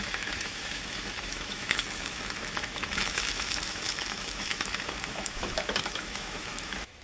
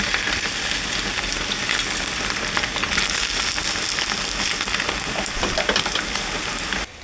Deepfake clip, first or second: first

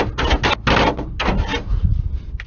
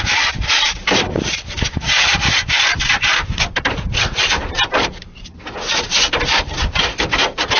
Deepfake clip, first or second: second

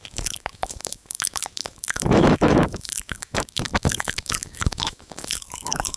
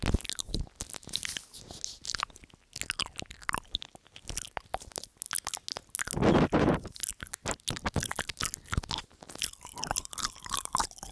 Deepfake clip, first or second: first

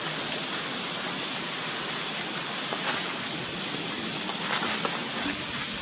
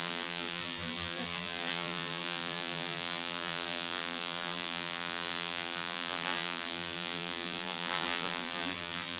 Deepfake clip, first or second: second